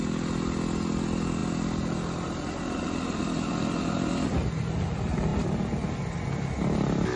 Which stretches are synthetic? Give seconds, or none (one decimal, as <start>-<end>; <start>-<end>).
none

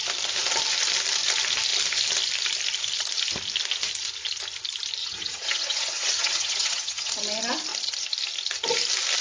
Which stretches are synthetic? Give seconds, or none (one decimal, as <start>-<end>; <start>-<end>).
5.0-7.1

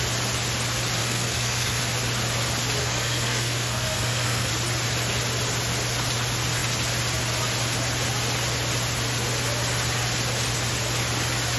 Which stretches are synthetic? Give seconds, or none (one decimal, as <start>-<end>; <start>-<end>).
1.0-1.8; 2.8-4.5

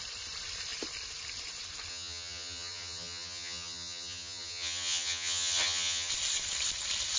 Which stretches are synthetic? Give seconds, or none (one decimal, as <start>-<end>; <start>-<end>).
1.9-6.1

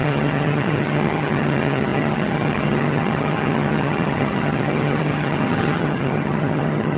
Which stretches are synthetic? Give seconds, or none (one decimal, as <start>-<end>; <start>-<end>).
0.0-7.0